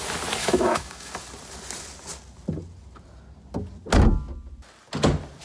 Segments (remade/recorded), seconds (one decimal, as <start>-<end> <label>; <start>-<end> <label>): 0.0-0.4 recorded; 0.4-1.1 remade; 1.1-5.4 recorded